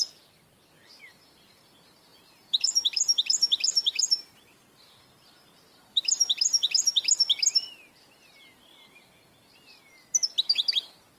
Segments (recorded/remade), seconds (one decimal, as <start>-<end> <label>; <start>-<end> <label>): 0.0-2.1 recorded; 2.1-4.9 remade; 4.9-5.9 recorded; 5.9-7.1 remade; 7.1-11.2 recorded